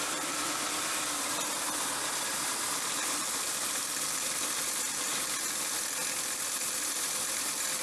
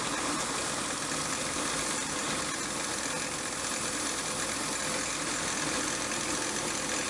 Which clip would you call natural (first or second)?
second